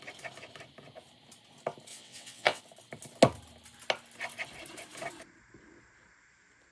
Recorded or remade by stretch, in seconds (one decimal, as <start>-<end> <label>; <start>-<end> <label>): 0.0-1.9 recorded; 1.9-2.6 remade; 2.6-6.7 recorded